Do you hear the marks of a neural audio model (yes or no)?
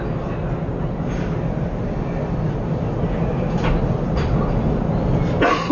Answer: no